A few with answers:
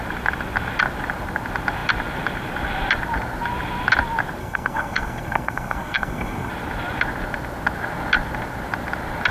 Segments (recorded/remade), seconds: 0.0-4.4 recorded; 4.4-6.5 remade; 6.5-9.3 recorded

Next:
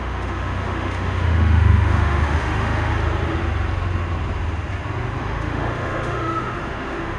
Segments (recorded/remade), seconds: 0.0-2.9 remade; 2.9-5.2 recorded; 5.2-7.2 remade

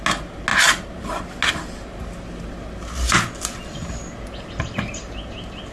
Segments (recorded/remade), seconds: 0.0-5.7 recorded

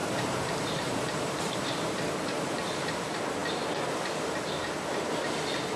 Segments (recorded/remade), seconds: 0.0-2.9 remade; 2.9-5.8 recorded

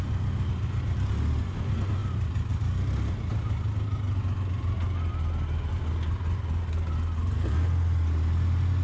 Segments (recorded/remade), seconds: 0.0-8.8 recorded

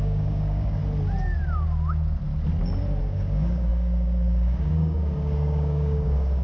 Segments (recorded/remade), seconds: 0.0-0.8 remade; 0.8-3.0 recorded; 3.0-6.4 remade